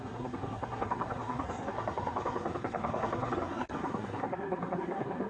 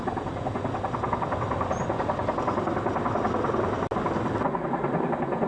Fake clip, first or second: first